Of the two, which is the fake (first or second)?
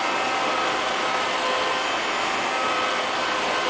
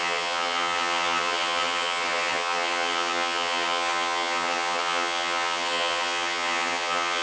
second